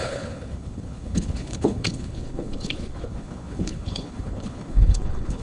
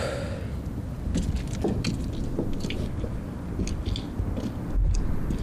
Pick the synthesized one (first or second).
first